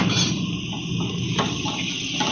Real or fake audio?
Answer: real